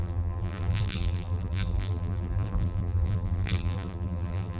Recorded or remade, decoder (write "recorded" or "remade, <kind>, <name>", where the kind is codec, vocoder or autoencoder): remade, vocoder, BigVGAN v2